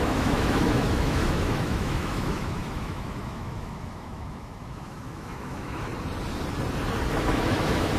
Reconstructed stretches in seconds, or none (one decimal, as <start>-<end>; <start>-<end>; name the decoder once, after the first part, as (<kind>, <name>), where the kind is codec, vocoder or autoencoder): 0.0-5.9 (autoencoder, DAC-VAE); 7.1-8.0